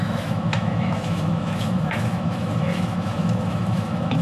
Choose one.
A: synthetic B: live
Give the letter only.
A